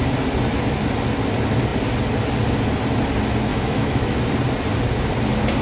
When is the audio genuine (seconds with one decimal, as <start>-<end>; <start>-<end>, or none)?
0.0-3.5; 4.2-5.6